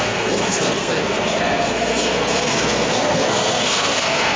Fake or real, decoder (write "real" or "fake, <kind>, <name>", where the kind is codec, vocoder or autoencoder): fake, codec, SNAC